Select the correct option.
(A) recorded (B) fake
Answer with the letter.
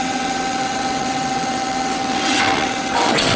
B